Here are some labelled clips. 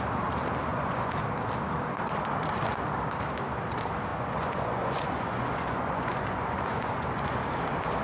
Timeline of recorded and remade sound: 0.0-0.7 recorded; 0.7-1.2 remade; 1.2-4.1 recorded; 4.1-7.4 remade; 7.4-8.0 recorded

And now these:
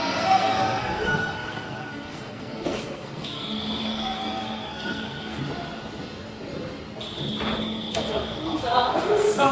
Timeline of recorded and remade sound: 0.0-5.4 remade; 5.4-7.6 recorded; 7.6-9.5 remade

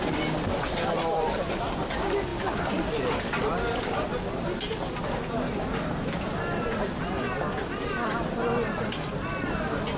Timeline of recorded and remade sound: 0.0-10.0 recorded

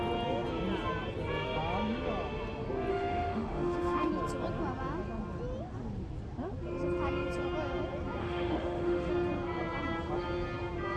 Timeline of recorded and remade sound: 0.0-2.9 recorded; 2.9-4.1 remade; 4.1-8.2 recorded; 8.2-9.1 remade; 9.1-11.0 recorded

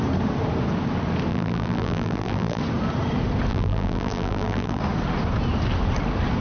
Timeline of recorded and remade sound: 0.0-1.3 recorded; 1.3-2.6 remade; 2.6-3.5 recorded; 3.5-4.8 remade; 4.8-6.4 recorded

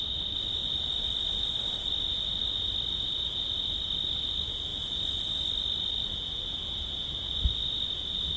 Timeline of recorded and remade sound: 0.0-0.6 recorded; 0.6-1.8 remade; 1.8-8.4 recorded